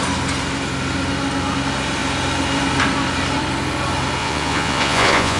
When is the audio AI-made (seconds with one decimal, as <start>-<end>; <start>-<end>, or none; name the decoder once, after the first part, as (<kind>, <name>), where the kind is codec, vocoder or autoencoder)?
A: 4.2-5.4 (vocoder, Vocos)